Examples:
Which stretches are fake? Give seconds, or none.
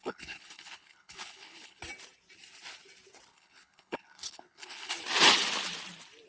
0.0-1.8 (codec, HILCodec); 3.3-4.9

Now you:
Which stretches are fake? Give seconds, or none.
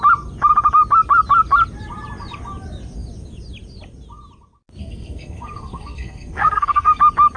4.8-7.0 (codec, SNAC)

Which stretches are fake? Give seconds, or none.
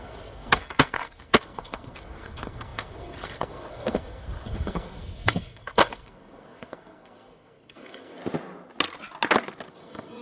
0.0-8.2 (codec, SNAC); 9.7-10.2